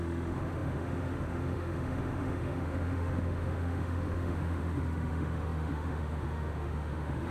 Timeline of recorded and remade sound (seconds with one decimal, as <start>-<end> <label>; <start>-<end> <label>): 0.0-7.3 remade